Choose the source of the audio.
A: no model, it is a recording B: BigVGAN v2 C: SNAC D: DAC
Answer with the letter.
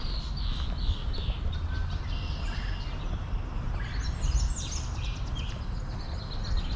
A